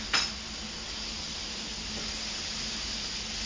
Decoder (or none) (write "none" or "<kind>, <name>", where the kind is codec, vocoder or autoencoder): none